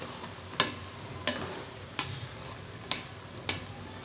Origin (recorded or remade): recorded